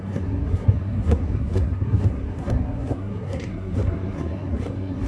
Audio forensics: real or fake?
fake